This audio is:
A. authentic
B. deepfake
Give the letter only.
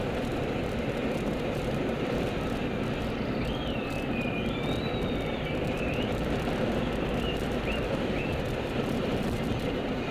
B